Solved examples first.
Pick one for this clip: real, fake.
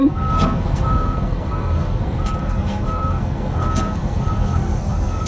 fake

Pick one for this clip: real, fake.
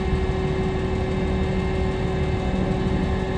real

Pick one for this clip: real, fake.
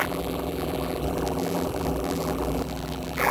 fake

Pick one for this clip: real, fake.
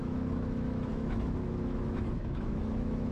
fake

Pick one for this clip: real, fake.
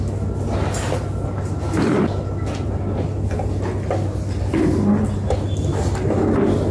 real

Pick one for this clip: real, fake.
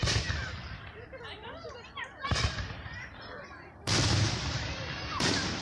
fake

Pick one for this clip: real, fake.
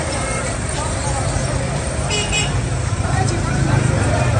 fake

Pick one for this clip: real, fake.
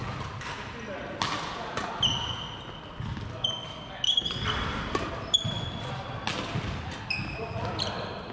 real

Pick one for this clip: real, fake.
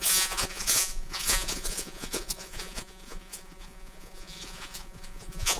fake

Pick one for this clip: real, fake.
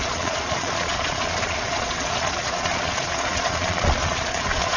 fake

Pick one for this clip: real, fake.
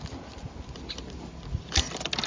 real